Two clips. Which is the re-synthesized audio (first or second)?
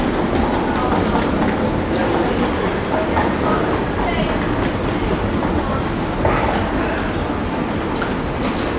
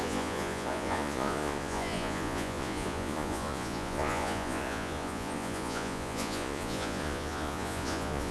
second